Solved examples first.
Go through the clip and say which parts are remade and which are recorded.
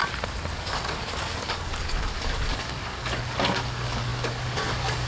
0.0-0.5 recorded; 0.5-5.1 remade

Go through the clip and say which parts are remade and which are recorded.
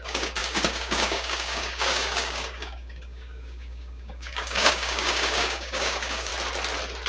0.0-6.3 remade; 6.3-7.1 recorded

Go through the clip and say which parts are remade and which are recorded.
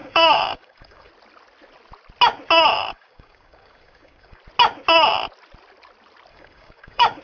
0.0-1.1 remade; 1.1-2.7 recorded; 2.7-4.4 remade; 4.4-6.3 recorded; 6.3-7.2 remade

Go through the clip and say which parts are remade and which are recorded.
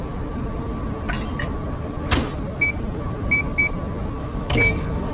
0.0-4.2 recorded; 4.2-5.1 remade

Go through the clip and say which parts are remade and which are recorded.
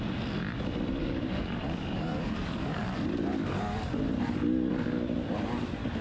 0.0-1.0 recorded; 1.0-2.8 remade; 2.8-3.3 recorded; 3.3-3.8 remade; 3.8-6.0 recorded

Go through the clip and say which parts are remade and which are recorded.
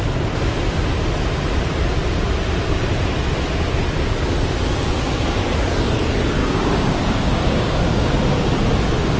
0.0-6.4 recorded; 6.4-8.1 remade; 8.1-9.2 recorded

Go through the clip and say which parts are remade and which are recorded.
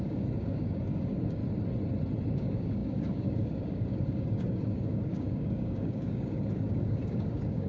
0.0-1.4 remade; 1.4-2.3 recorded; 2.3-7.7 remade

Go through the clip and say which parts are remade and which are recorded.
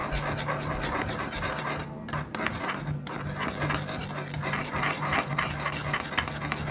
0.0-6.7 recorded